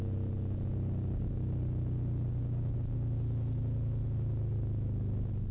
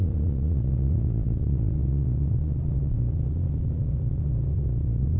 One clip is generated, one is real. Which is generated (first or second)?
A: second